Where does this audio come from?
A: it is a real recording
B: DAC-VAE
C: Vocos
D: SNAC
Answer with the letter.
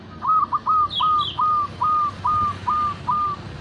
A